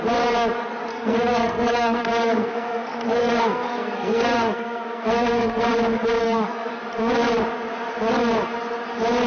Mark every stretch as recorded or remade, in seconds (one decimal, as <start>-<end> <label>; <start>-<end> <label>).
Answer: 0.0-0.9 recorded; 0.9-5.7 remade; 5.7-6.2 recorded; 6.2-6.7 remade; 6.7-9.3 recorded